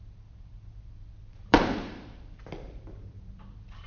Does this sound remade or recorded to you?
remade